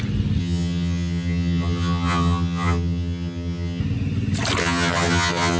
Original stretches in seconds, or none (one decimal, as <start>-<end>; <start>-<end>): 0.0-0.4; 3.8-4.6